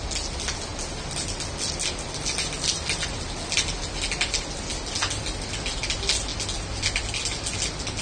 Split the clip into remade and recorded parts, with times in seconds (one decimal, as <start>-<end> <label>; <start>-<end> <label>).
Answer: 0.0-8.0 recorded